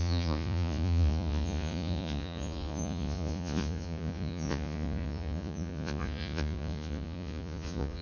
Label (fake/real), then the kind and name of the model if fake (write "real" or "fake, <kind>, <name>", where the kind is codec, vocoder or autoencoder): fake, vocoder, Vocos